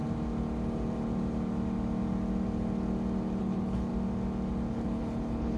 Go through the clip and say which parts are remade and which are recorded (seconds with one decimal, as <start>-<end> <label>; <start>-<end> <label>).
0.0-3.4 recorded; 3.4-3.9 remade; 3.9-4.7 recorded; 4.7-5.6 remade